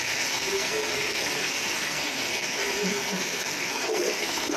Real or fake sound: fake